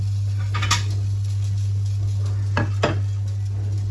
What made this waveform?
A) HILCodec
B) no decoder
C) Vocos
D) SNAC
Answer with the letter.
B